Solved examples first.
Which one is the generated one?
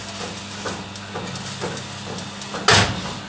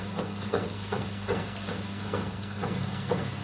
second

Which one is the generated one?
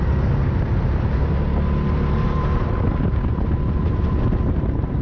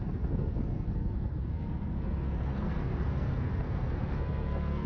second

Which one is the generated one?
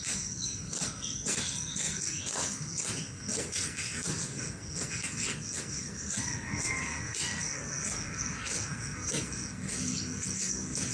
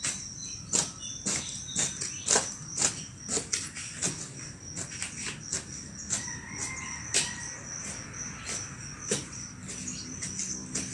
first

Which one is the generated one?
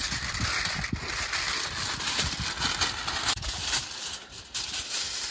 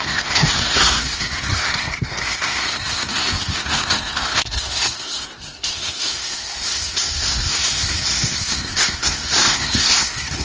second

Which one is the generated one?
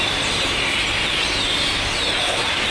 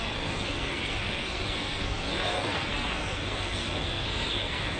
second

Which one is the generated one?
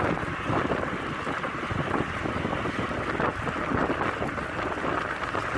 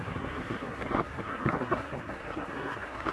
second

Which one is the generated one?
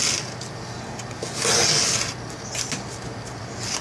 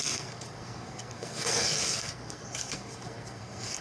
second